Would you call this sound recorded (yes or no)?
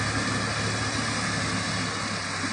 yes